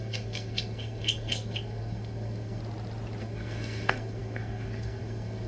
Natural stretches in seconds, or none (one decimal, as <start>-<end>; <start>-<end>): 2.6-3.2